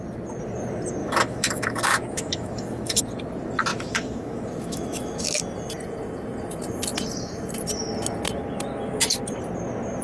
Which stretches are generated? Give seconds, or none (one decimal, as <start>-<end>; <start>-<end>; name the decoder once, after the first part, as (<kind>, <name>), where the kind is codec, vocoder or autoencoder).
1.0-3.0 (autoencoder, DAC-VAE); 3.7-5.4